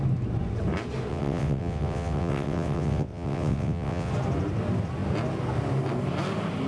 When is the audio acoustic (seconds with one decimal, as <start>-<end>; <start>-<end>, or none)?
0.0-1.1; 4.1-6.7